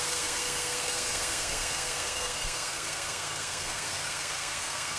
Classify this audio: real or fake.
fake